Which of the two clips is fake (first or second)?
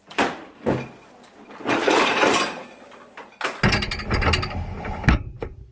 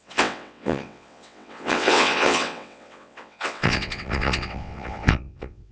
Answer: second